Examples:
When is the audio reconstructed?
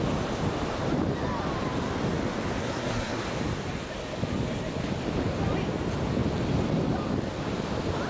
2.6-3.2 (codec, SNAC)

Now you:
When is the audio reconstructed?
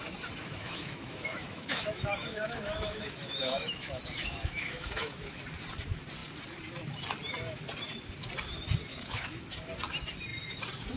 0.4-5.4 (autoencoder, DAC-VAE); 8.9-9.4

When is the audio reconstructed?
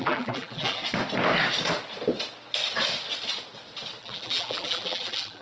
0.0-0.8 (vocoder, BigVGAN v2); 4.0-5.4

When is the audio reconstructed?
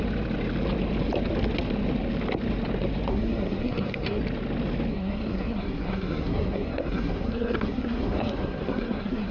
3.1-4.2 (codec, SNAC); 4.9-9.3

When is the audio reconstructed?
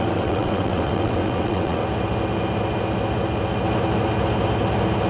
0.0-1.8 (vocoder, WaveNeXt)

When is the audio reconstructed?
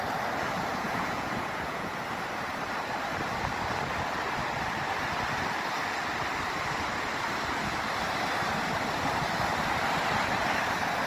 0.7-2.0 (vocoder, Vocos)